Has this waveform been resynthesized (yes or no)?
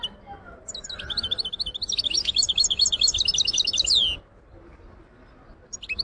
no